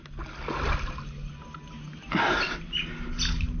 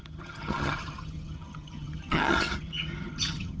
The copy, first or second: second